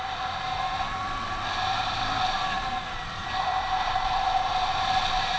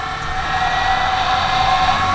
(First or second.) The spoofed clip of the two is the first